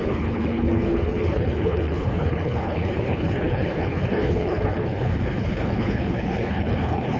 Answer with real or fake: fake